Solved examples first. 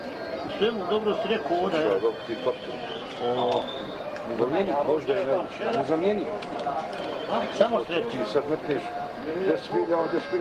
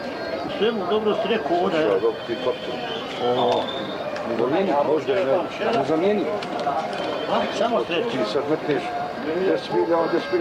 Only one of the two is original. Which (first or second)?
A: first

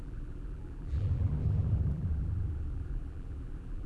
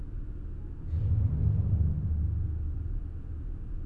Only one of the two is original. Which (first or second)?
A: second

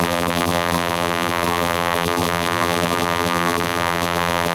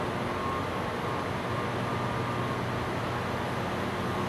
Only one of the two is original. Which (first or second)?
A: second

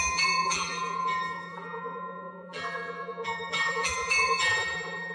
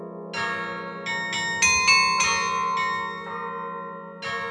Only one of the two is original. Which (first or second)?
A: second